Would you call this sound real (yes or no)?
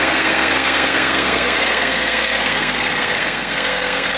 no